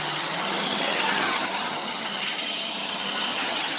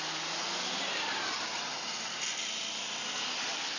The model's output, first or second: first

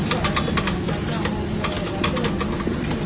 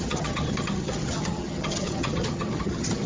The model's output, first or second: second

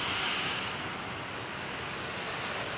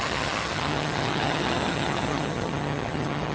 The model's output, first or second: second